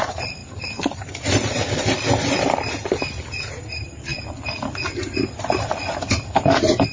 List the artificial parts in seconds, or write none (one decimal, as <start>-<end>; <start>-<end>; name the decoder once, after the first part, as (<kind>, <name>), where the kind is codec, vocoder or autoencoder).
0.0-4.1 (vocoder, BigVGAN v2); 5.2-6.9